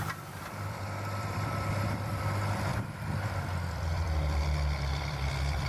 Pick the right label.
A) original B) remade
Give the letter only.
B